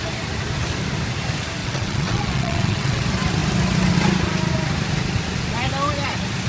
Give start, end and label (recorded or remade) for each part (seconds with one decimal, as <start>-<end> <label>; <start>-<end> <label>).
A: 0.0-1.6 recorded; 1.6-3.0 remade; 3.0-6.5 recorded